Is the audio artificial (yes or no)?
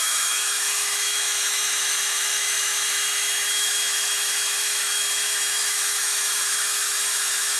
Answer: yes